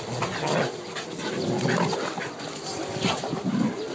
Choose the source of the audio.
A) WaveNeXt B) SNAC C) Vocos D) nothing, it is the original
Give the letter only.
D